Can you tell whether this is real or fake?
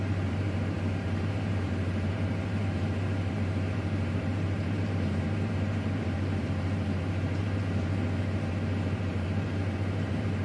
fake